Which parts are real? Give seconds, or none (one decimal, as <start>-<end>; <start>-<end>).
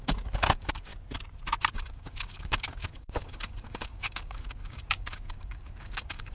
0.9-1.7